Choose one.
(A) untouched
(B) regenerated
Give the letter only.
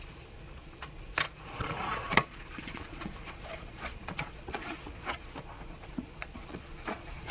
B